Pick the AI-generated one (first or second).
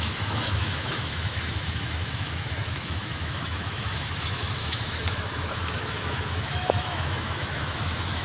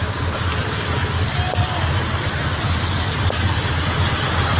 first